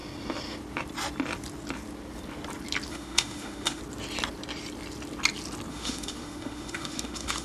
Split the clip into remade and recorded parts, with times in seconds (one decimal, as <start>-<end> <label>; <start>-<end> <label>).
0.0-2.9 recorded; 2.9-3.8 remade; 3.8-5.7 recorded; 5.7-7.4 remade